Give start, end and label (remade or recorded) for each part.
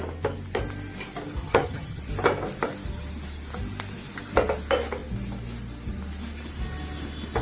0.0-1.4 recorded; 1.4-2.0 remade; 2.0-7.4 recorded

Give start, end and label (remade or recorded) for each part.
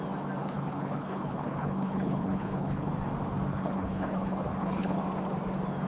0.0-0.4 recorded; 0.4-2.9 remade; 2.9-3.5 recorded; 3.5-5.0 remade; 5.0-5.9 recorded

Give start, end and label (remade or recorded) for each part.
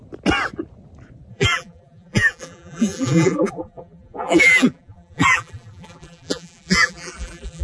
0.0-1.3 recorded; 1.3-7.6 remade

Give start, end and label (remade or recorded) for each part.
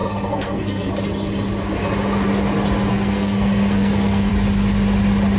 0.0-0.9 remade; 0.9-2.9 recorded; 2.9-4.3 remade; 4.3-5.4 recorded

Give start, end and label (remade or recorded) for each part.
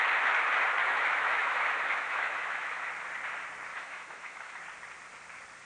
0.0-0.8 recorded; 0.8-2.9 remade; 2.9-3.7 recorded; 3.7-4.6 remade; 4.6-5.7 recorded